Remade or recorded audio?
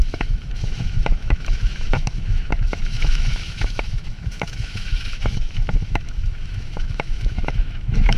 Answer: remade